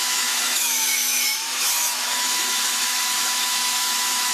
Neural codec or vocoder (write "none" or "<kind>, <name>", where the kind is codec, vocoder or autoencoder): autoencoder, DAC-VAE